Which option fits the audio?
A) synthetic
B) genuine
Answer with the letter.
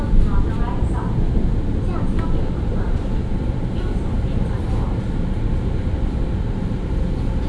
B